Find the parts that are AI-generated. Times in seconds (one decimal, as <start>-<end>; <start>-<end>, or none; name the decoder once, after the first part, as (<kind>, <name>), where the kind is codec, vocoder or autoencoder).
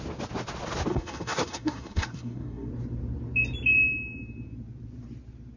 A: 0.9-2.7 (codec, SNAC)